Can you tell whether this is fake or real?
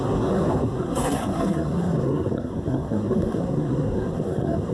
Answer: fake